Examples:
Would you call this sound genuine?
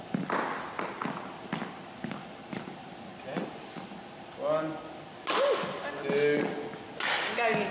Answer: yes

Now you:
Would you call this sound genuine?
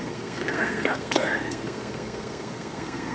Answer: no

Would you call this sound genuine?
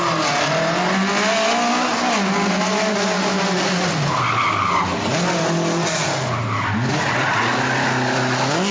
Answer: yes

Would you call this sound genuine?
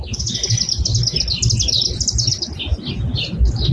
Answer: yes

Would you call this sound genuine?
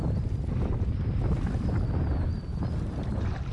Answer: yes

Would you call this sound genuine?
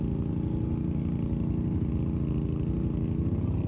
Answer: yes